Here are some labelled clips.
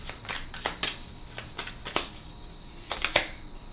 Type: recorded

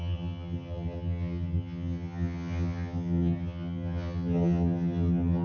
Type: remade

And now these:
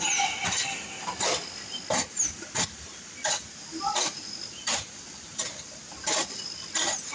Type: recorded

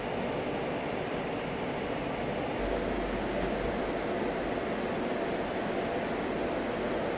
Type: recorded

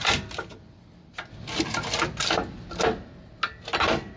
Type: recorded